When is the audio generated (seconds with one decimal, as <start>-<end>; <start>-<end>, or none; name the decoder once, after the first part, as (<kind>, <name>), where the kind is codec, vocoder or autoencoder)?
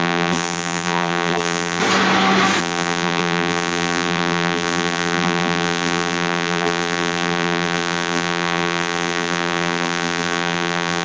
0.0-1.8 (vocoder, BigVGAN v2); 2.6-11.0